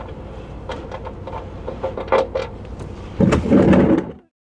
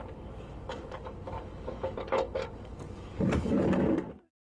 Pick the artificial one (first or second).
second